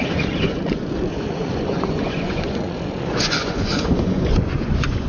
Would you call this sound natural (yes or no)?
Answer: no